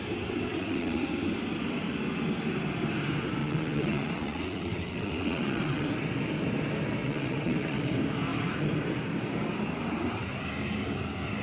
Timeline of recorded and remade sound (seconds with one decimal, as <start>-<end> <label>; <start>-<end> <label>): 0.0-0.5 recorded; 0.5-1.0 remade; 1.0-3.4 recorded; 3.4-5.9 remade; 5.9-7.0 recorded; 7.0-7.9 remade; 7.9-11.4 recorded